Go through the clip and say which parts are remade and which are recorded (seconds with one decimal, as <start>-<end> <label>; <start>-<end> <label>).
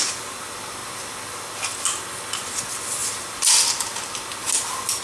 0.0-5.0 recorded